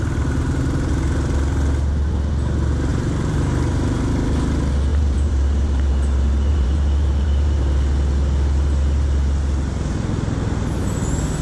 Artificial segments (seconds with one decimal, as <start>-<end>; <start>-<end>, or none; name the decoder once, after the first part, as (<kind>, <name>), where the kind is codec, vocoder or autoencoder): 2.9-4.1 (vocoder, BigVGAN v2); 4.9-5.9; 6.5-7.6